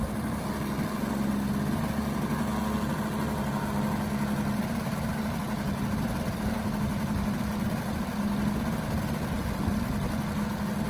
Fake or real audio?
real